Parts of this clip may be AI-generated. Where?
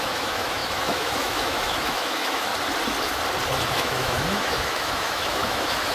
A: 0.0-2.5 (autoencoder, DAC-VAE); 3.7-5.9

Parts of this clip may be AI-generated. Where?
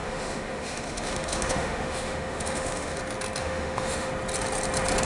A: 0.0-3.0 (autoencoder, DAC-VAE); 3.4-4.1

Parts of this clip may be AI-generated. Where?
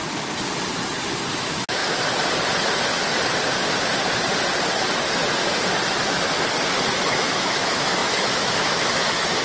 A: 1.3-1.8 (autoencoder, DAC-VAE); 6.9-9.4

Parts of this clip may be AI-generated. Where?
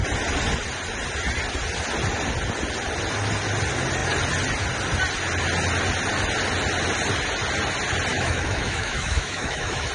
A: 8.1-9.9 (autoencoder, DAC-VAE)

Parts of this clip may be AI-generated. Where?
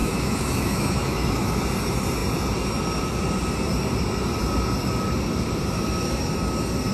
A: 0.0-1.6 (autoencoder, DAC-VAE)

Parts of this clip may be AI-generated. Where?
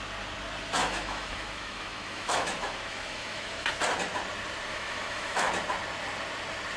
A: 0.8-3.7 (autoencoder, DAC-VAE); 4.7-5.5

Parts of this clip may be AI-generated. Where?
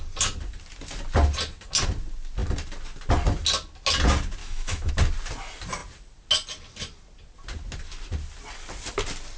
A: 4.4-4.9 (autoencoder, DAC-VAE)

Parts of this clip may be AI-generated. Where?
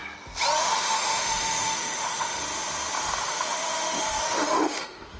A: 0.6-2.4 (autoencoder, DAC-VAE); 3.0-5.2